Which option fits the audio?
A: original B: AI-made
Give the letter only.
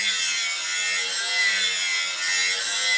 A